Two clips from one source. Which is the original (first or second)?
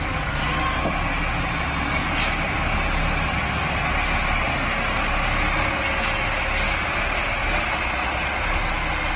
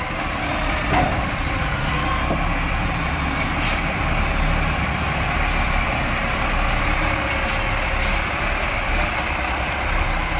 first